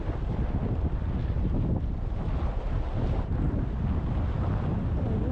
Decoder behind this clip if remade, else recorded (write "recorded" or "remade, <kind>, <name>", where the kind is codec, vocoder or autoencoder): recorded